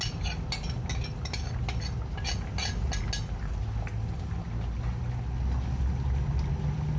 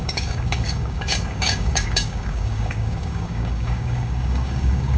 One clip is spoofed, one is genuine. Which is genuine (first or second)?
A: first